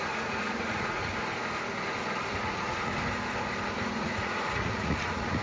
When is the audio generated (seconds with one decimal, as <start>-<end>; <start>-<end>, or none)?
0.0-1.1; 2.3-2.9; 3.8-5.4